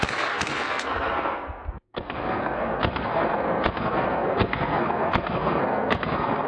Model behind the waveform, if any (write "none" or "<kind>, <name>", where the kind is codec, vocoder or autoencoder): codec, SNAC